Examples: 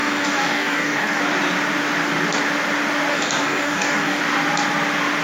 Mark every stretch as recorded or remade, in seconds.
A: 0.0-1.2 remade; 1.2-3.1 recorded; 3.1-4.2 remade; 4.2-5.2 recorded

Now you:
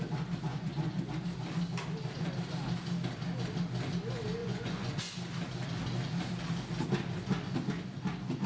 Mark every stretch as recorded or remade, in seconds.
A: 0.0-0.5 recorded; 0.5-1.1 remade; 1.1-4.4 recorded; 4.4-4.9 remade; 4.9-8.5 recorded